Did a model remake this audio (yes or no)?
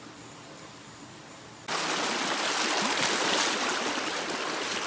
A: no